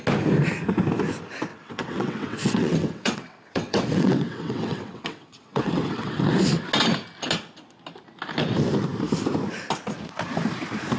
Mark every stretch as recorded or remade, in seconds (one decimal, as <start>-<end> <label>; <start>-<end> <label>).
0.0-1.5 recorded; 1.5-6.2 remade; 6.2-11.0 recorded